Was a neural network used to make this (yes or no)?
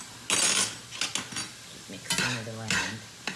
no